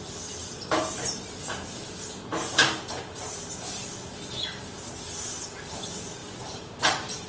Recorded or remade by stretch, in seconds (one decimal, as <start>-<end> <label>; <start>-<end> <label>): 0.0-0.4 recorded; 0.4-0.9 remade; 0.9-2.3 recorded; 2.3-3.0 remade; 3.0-6.2 recorded; 6.2-7.3 remade